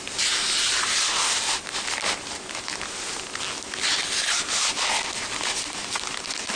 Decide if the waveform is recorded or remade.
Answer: recorded